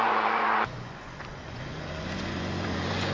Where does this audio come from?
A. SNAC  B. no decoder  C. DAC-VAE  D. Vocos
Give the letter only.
D